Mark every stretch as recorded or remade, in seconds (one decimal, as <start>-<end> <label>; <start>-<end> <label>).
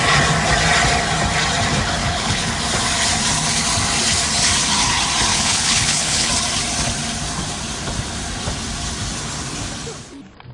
0.0-2.0 recorded; 2.0-2.5 remade; 2.5-5.3 recorded; 5.3-6.3 remade; 6.3-10.5 recorded